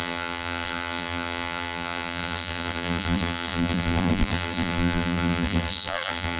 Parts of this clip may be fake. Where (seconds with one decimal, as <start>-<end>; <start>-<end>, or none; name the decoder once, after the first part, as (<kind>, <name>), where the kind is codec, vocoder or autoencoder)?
0.0-6.4 (vocoder, BigVGAN v2)

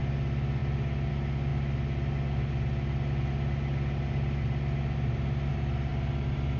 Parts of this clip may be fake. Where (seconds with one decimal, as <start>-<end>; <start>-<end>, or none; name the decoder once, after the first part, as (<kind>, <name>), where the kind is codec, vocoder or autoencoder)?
none

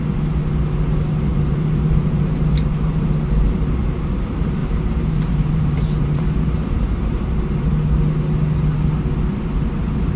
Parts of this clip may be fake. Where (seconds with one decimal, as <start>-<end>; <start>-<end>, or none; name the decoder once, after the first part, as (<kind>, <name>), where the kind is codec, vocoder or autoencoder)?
1.3-3.0 (vocoder, BigVGAN v2); 4.6-7.7

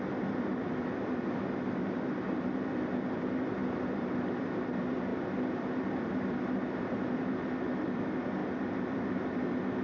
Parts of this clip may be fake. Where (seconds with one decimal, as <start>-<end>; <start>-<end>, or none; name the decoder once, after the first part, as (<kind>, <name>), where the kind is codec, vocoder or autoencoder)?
0.0-9.8 (vocoder, BigVGAN v2)

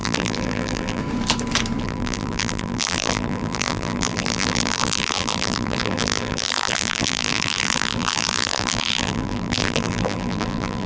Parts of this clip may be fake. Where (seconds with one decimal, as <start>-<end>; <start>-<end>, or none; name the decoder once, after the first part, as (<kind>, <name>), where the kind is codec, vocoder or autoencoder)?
0.0-1.0 (vocoder, BigVGAN v2); 1.8-10.9

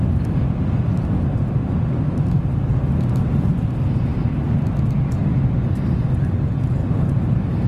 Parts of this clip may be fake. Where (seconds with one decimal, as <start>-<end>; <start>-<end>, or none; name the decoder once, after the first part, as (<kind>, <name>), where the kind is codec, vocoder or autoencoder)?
6.8-7.7 (vocoder, BigVGAN v2)

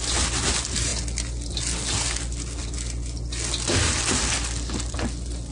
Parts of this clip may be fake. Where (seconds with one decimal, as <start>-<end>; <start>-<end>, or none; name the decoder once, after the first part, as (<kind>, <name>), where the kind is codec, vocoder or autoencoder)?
none

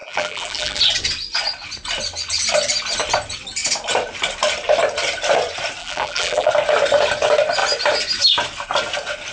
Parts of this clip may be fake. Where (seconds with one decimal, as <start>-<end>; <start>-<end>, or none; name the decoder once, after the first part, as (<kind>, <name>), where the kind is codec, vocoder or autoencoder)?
0.0-0.8 (vocoder, BigVGAN v2); 5.8-6.5